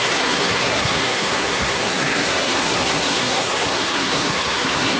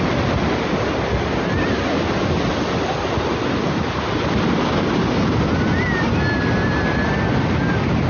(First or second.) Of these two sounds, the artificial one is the first